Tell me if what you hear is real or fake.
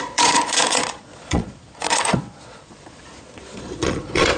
fake